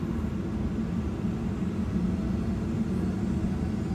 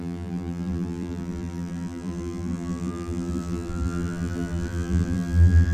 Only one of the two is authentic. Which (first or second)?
first